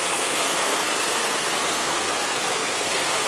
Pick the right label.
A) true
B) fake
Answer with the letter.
B